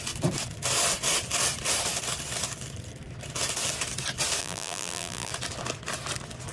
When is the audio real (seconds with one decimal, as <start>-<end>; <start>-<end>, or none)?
0.0-4.4; 5.3-6.5